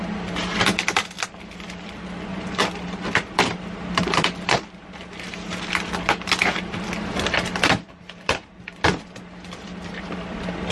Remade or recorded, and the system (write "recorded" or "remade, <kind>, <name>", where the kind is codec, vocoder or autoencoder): remade, vocoder, BigVGAN v2